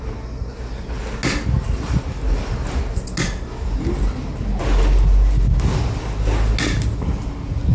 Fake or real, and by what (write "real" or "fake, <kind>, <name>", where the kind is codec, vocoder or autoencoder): real